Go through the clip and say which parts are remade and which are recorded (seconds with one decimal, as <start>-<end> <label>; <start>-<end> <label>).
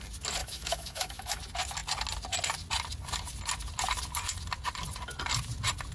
0.0-0.4 recorded; 0.4-1.4 remade; 1.4-5.9 recorded